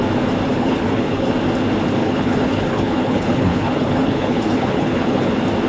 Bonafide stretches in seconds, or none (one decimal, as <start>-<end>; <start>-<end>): 0.0-0.5; 1.3-2.0; 5.3-5.7

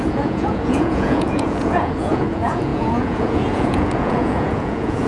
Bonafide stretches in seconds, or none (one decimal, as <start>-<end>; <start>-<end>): none

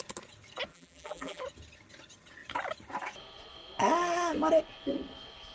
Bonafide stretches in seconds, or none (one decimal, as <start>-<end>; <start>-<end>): 0.0-0.7; 1.4-5.5

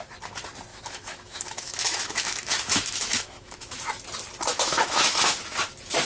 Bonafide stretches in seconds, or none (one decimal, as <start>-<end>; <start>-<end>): 0.0-0.7; 3.8-4.5; 5.4-6.0

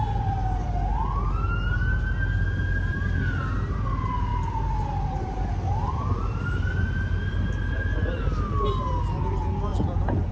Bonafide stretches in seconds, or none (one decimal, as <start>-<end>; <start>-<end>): 0.0-9.7

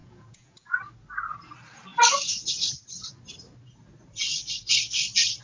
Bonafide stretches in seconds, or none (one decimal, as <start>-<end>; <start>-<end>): 0.8-5.4